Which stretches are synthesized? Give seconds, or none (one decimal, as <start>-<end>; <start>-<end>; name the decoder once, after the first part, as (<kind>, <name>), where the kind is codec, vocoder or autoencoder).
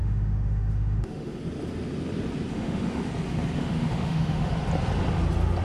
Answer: 0.0-1.4 (autoencoder, DAC-VAE); 2.5-3.1; 3.6-4.5